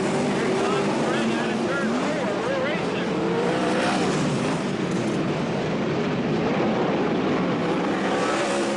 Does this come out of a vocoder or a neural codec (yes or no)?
yes